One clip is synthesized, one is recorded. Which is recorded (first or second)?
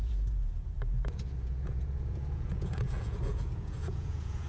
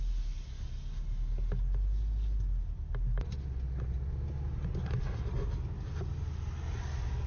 second